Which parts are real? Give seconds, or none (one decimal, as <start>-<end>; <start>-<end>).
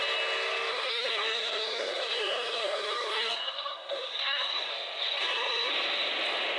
0.0-0.7; 4.7-5.2; 5.7-6.6